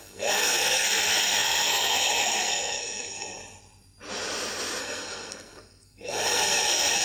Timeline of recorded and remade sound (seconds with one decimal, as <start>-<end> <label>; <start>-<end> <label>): 0.0-3.4 remade; 3.4-4.8 recorded; 4.8-7.0 remade